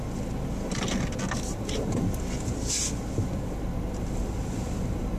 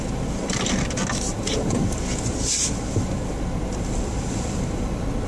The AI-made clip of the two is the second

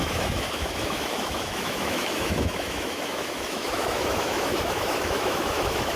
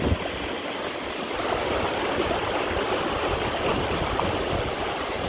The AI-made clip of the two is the first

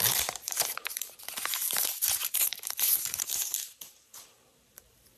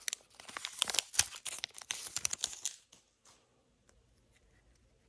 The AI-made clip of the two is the first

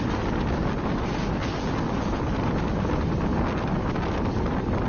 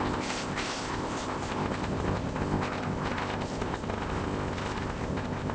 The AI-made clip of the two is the second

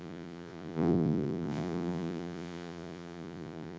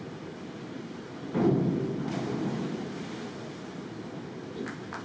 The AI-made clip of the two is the first